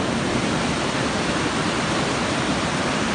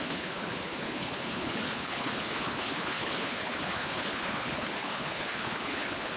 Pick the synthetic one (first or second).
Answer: second